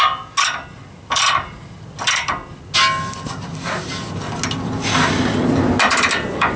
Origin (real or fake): real